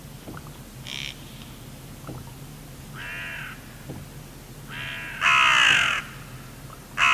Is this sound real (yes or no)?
yes